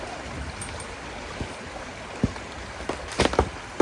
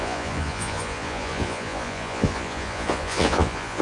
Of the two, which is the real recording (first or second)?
first